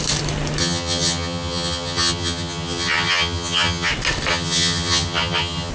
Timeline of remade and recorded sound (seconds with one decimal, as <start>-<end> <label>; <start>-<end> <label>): 0.0-0.6 recorded; 0.6-3.9 remade; 3.9-4.3 recorded; 4.3-5.7 remade